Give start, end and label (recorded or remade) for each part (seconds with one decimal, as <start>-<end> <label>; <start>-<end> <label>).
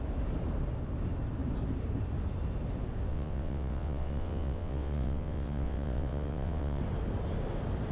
0.0-3.1 recorded; 3.1-6.8 remade; 6.8-7.9 recorded